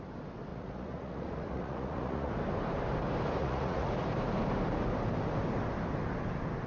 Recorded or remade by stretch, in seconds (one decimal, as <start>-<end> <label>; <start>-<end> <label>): 0.0-0.5 recorded; 0.5-2.3 remade; 2.3-3.4 recorded; 3.4-3.9 remade; 3.9-6.7 recorded